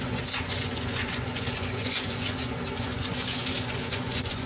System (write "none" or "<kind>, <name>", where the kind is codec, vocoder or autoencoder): vocoder, Vocos